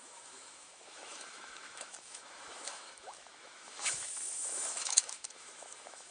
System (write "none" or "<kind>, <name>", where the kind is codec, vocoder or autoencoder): autoencoder, DAC-VAE